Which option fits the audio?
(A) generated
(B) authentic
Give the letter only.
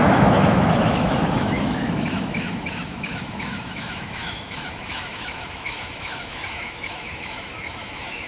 A